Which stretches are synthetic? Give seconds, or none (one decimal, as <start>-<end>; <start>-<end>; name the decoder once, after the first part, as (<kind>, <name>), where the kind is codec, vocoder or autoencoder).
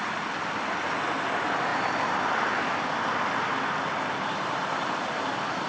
none